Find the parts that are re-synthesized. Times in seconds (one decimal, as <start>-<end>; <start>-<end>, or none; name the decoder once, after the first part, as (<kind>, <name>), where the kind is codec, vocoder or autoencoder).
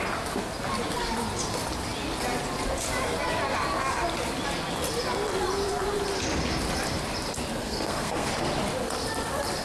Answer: 7.6-8.3 (codec, SNAC)